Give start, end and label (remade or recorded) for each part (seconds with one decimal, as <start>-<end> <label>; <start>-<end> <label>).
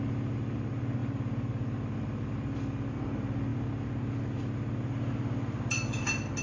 0.0-6.4 recorded